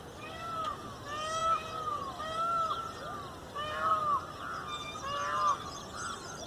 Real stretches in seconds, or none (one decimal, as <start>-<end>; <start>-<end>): 0.0-6.5

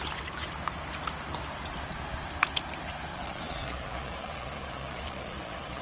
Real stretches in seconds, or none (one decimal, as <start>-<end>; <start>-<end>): 0.0-3.1